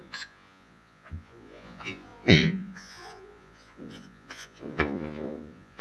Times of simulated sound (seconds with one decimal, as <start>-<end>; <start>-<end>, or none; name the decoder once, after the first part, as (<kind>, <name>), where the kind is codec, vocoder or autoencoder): 0.0-5.8 (vocoder, Vocos)